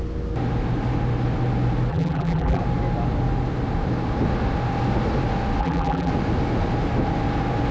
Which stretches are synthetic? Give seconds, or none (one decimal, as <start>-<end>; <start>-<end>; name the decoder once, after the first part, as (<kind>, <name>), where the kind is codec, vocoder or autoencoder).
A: 1.9-2.6 (vocoder, BigVGAN v2); 5.6-6.1